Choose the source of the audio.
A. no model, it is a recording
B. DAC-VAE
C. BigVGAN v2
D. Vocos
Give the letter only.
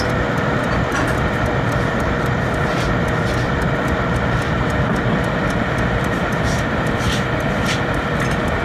C